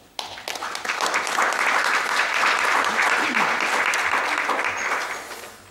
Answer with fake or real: real